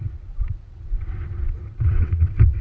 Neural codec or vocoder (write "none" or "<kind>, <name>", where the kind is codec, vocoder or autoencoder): vocoder, WaveNeXt